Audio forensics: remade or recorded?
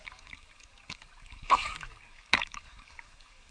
remade